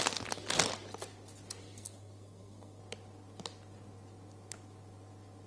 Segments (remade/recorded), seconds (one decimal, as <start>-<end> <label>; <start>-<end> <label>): 0.0-1.6 recorded; 1.6-2.8 remade; 2.8-5.5 recorded

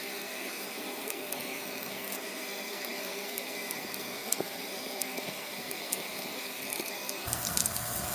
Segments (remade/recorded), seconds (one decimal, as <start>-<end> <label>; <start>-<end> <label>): 0.0-8.1 remade

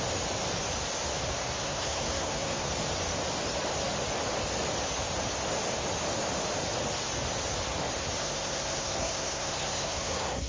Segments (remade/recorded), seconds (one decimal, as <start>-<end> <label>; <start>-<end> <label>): 0.0-1.6 recorded; 1.6-2.7 remade; 2.7-8.2 recorded; 8.2-10.5 remade

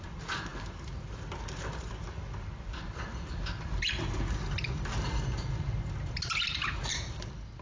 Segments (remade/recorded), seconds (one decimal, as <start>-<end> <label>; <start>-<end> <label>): 0.0-7.6 recorded

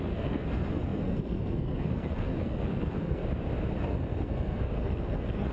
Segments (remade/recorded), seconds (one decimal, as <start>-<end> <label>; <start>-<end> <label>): 0.0-3.2 remade; 3.2-3.8 recorded; 3.8-5.5 remade

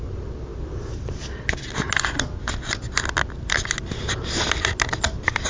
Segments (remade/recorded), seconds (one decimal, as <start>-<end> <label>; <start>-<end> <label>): 0.0-5.5 recorded